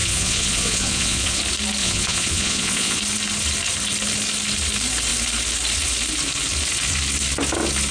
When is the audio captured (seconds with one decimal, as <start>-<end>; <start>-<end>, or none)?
1.4-1.8; 3.0-7.9